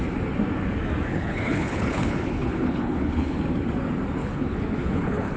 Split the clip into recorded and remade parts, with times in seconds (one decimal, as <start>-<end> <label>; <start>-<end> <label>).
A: 0.0-1.1 recorded; 1.1-3.4 remade; 3.4-4.2 recorded; 4.2-5.4 remade